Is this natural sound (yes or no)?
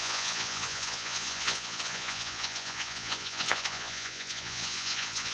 no